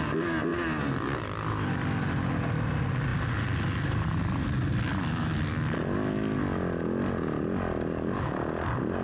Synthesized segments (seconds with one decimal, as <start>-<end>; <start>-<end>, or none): none